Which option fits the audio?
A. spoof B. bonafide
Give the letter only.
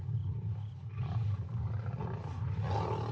B